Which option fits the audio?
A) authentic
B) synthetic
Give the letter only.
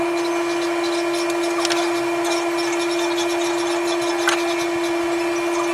A